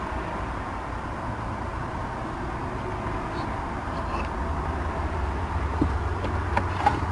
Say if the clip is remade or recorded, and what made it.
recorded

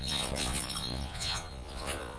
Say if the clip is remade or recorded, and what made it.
remade, vocoder, Vocos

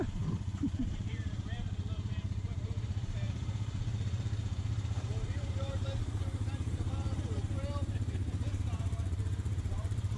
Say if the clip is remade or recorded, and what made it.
remade, vocoder, BigVGAN v2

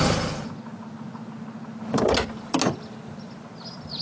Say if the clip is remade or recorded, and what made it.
recorded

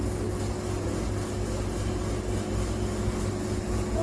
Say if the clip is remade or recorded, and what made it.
recorded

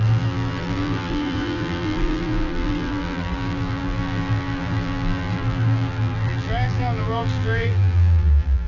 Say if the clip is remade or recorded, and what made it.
remade, vocoder, BigVGAN v2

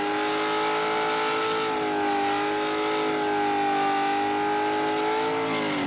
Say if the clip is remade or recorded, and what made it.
recorded